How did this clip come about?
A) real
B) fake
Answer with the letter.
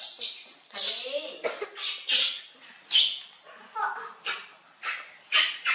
A